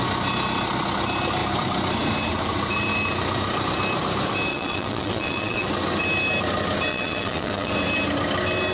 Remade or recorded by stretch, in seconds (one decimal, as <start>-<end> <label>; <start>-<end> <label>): 0.0-4.5 recorded; 4.5-5.7 remade; 5.7-6.9 recorded; 6.9-7.7 remade; 7.7-8.7 recorded